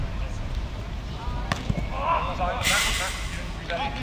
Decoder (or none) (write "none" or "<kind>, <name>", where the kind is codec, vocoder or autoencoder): none